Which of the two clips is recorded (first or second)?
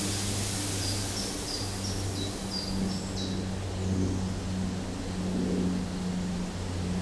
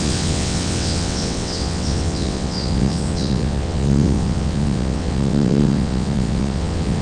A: first